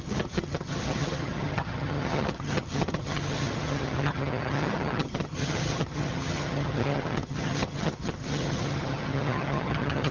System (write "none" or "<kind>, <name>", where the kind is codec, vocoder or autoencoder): vocoder, HiFi-GAN